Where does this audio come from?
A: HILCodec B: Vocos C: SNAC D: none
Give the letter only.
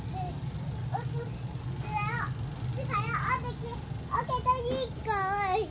D